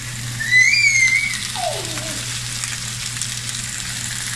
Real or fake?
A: real